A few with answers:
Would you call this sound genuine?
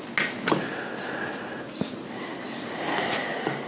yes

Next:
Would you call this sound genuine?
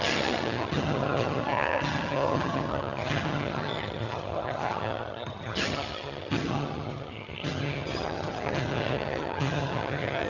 no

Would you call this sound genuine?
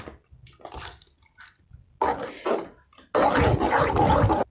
yes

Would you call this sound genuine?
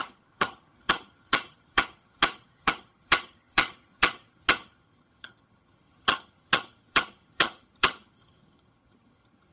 no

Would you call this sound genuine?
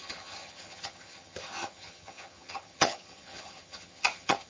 no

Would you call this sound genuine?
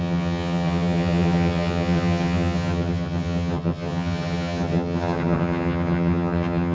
no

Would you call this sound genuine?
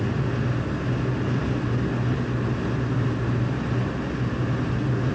yes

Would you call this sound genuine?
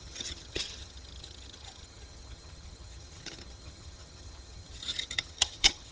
no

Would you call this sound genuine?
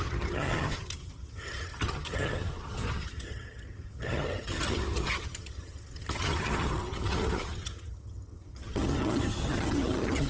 no